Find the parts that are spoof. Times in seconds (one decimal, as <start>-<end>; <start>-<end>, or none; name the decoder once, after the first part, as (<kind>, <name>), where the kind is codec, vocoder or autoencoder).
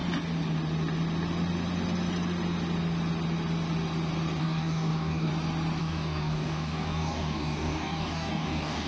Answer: 4.4-5.3 (codec, DAC); 5.8-8.9